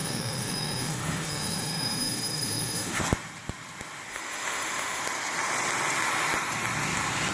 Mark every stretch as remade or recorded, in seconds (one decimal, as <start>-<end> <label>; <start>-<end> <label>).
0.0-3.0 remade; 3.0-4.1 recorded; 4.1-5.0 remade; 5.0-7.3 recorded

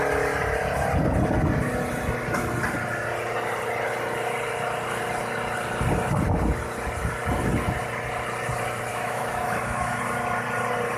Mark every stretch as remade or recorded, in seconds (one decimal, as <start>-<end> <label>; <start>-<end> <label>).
0.0-8.9 recorded; 8.9-10.0 remade; 10.0-11.0 recorded

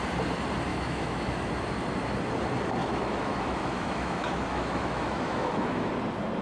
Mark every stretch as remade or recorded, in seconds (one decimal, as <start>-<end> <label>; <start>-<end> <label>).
0.0-0.7 recorded; 0.7-1.5 remade; 1.5-2.8 recorded; 2.8-5.9 remade; 5.9-6.4 recorded

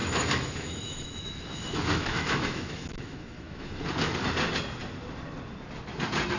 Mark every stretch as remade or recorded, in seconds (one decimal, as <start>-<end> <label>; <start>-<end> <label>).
0.0-3.8 remade; 3.8-6.4 recorded